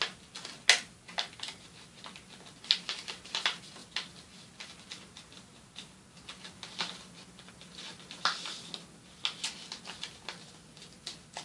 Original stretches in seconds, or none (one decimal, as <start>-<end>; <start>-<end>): 0.0-11.4